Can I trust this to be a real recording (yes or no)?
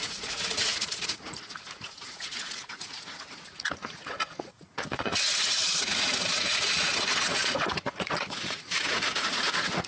no